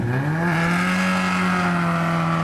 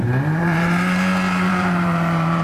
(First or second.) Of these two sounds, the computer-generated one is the second